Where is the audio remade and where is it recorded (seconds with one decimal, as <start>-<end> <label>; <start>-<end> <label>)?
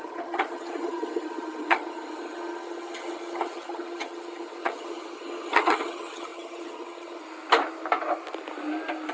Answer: 0.0-7.2 remade; 7.2-9.1 recorded